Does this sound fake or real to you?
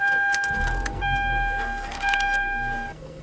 fake